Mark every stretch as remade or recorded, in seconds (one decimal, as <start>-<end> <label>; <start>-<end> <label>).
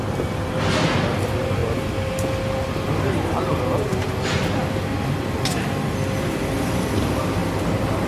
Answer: 0.0-8.1 recorded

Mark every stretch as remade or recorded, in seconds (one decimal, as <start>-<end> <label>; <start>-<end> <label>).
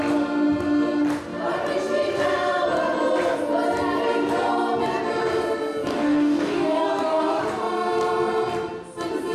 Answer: 0.0-5.9 recorded; 5.9-7.4 remade; 7.4-9.3 recorded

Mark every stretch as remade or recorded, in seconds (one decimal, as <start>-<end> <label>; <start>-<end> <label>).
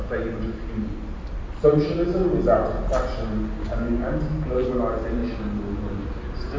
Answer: 0.0-3.6 recorded; 3.6-4.2 remade; 4.2-6.6 recorded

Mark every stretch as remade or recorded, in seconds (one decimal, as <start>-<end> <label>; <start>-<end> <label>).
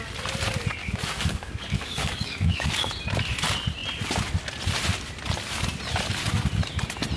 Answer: 0.0-0.8 recorded; 0.8-2.9 remade; 2.9-7.2 recorded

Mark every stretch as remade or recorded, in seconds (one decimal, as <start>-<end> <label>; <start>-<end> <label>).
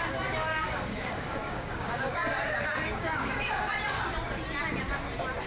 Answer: 0.0-0.5 recorded; 0.5-3.7 remade; 3.7-5.5 recorded